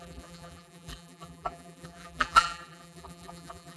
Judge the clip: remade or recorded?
remade